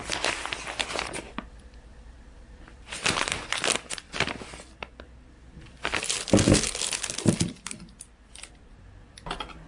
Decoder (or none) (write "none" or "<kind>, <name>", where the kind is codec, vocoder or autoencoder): none